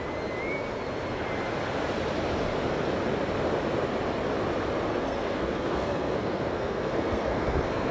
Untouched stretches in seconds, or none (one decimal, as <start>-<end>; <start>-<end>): 0.0-4.9